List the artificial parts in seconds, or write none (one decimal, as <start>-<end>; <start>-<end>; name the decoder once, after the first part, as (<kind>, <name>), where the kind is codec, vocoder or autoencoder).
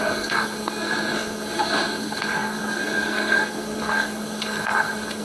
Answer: 0.0-5.2 (codec, SNAC)